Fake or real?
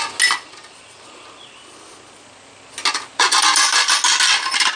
real